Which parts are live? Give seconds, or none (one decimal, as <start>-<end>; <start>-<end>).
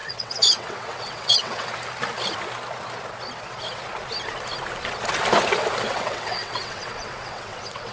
1.7-5.9